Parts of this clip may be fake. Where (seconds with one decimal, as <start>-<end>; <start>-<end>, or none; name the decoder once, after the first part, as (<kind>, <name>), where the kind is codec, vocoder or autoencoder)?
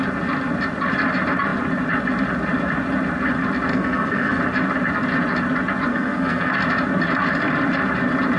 3.7-4.4 (codec, SNAC); 5.9-6.5